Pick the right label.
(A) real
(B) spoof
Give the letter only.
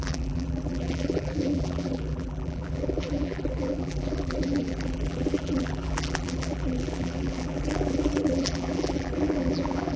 B